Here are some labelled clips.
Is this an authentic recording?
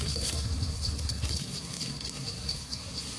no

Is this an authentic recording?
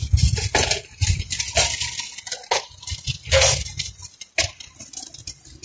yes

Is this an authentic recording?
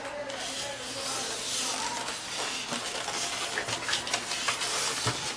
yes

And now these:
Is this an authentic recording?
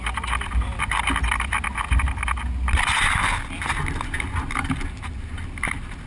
yes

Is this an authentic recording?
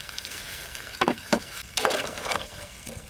no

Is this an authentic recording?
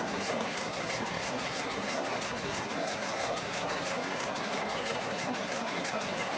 no